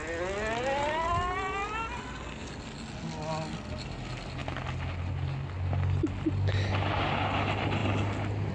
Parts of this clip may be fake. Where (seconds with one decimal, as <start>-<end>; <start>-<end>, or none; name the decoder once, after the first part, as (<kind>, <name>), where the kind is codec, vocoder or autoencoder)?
none